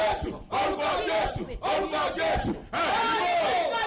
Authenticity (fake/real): real